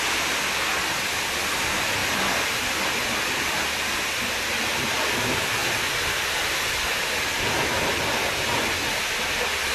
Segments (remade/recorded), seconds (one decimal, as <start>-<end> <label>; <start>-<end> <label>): 0.0-9.7 recorded